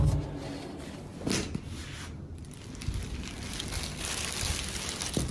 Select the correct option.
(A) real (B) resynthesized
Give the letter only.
A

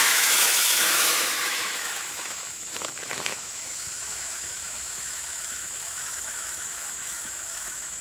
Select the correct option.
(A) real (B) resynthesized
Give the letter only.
B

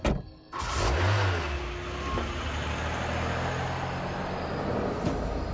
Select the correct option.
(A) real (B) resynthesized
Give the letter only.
A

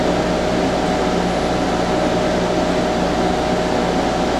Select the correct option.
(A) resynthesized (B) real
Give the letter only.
B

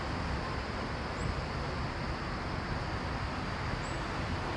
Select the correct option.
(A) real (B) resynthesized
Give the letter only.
A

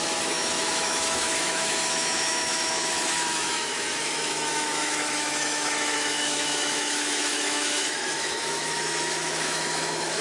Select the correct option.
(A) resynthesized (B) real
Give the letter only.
A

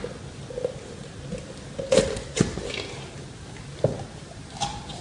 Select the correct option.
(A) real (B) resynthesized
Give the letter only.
A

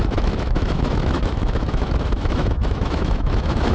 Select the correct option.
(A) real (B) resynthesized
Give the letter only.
B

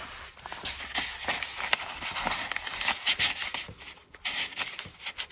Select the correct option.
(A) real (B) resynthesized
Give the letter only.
A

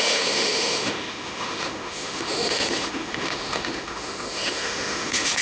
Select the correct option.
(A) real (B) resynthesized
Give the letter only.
B